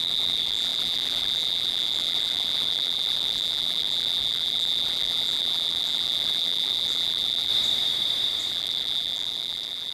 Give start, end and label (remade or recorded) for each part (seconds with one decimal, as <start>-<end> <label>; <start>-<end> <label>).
0.0-7.5 remade; 7.5-8.5 recorded; 8.5-9.9 remade